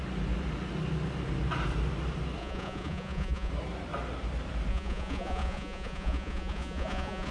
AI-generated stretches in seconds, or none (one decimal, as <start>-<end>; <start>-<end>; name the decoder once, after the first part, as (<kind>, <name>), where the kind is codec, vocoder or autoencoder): 2.4-3.5 (vocoder, Vocos); 4.7-7.3